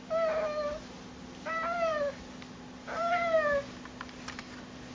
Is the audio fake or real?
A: real